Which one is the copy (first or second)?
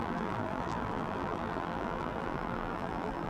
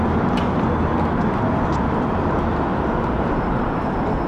first